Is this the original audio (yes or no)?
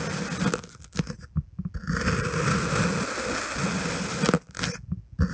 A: yes